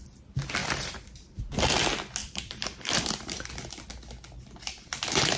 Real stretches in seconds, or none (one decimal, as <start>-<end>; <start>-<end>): 0.0-0.6; 1.4-2.2; 3.5-5.4